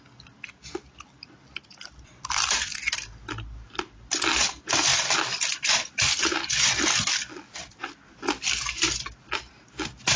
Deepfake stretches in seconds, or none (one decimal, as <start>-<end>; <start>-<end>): none